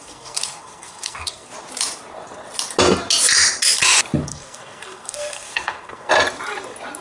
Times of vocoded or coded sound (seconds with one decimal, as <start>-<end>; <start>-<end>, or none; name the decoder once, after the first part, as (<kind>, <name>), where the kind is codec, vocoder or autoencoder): 0.0-1.5 (codec, SNAC); 4.3-6.1